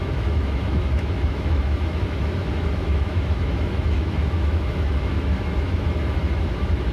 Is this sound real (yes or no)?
no